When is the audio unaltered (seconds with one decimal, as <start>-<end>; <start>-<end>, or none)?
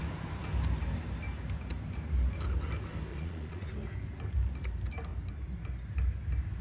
0.0-3.1; 3.7-6.6